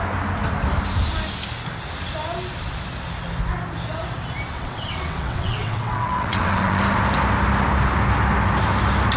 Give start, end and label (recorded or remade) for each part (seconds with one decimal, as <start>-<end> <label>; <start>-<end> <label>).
0.0-4.5 recorded; 4.5-6.8 remade; 6.8-9.2 recorded